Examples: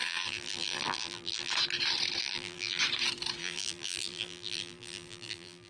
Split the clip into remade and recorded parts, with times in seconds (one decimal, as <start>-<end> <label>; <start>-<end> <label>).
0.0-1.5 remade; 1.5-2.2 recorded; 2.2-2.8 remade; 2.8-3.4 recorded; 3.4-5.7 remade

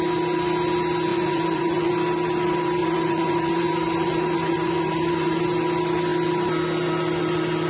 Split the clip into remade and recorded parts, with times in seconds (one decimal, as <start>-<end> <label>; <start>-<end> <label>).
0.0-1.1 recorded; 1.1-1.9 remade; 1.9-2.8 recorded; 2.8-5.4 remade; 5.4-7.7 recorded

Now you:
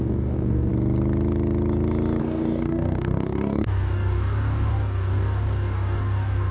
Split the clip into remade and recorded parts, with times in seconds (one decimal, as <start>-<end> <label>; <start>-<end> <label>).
0.0-0.7 remade; 0.7-2.2 recorded; 2.2-6.5 remade